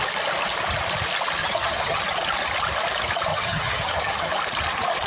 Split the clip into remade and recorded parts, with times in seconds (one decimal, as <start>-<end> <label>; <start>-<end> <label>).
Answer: 0.0-1.4 recorded; 1.4-2.0 remade; 2.0-3.3 recorded; 3.3-4.3 remade; 4.3-5.1 recorded